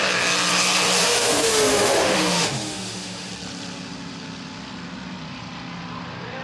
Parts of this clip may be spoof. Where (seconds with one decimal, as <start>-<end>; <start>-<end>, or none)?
1.0-3.3